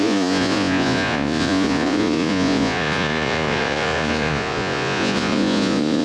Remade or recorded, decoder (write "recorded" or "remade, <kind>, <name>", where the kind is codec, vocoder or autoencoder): remade, vocoder, Vocos